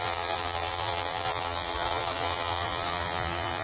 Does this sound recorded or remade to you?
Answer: remade